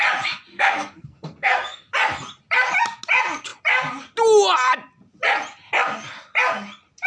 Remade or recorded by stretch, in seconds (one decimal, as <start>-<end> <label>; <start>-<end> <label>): 0.0-0.5 recorded; 0.5-1.9 remade; 1.9-7.1 recorded

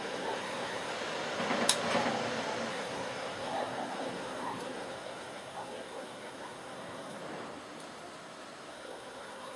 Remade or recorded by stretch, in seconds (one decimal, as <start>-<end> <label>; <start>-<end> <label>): 0.0-0.9 remade; 0.9-2.7 recorded; 2.7-7.2 remade; 7.2-8.7 recorded; 8.7-9.6 remade

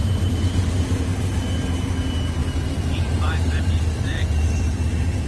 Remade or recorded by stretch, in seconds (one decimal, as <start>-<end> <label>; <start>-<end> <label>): 0.0-1.0 remade; 1.0-2.4 recorded; 2.4-5.3 remade